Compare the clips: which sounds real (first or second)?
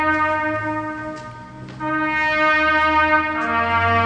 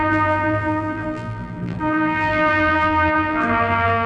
first